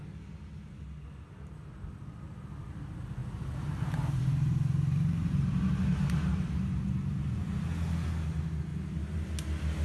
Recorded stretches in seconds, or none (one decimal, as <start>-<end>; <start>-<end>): 0.0-3.2; 7.6-8.7; 9.3-9.8